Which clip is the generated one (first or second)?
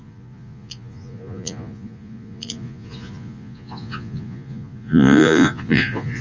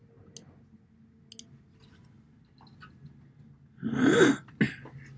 first